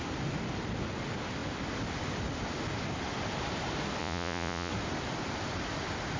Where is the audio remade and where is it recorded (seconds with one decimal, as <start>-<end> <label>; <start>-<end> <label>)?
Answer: 0.0-4.0 recorded; 4.0-4.7 remade; 4.7-6.2 recorded